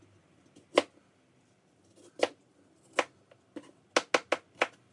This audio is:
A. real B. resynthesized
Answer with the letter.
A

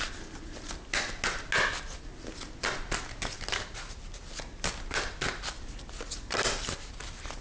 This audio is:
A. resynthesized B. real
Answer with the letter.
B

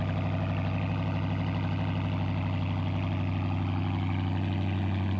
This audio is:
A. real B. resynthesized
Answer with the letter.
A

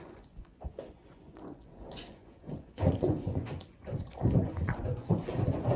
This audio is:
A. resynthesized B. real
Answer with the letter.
A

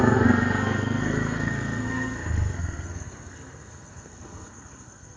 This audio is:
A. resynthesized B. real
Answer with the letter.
A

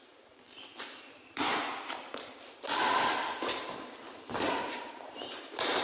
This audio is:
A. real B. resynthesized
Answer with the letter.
B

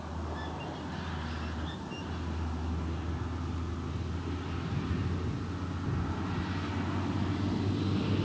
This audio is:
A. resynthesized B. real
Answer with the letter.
B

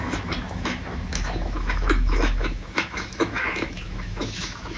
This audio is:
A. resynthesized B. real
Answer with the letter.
A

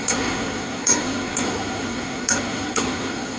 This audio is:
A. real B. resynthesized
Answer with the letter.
B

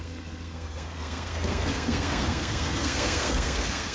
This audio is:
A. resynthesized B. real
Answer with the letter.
A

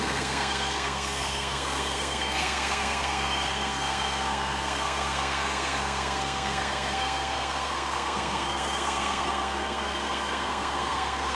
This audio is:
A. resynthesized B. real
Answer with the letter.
A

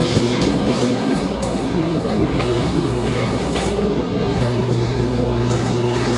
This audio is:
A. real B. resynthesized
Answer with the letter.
B